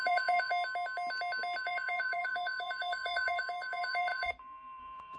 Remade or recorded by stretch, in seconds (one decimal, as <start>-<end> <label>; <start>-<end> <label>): 0.0-0.5 remade; 0.5-1.6 recorded; 1.6-5.2 remade